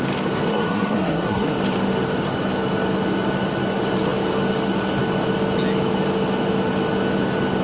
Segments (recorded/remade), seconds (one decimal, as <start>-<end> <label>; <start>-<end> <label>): 0.0-0.5 recorded; 0.5-1.5 remade; 1.5-7.6 recorded